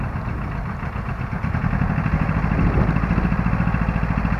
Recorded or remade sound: recorded